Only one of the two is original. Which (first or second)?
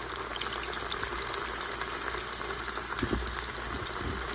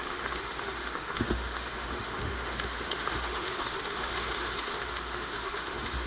first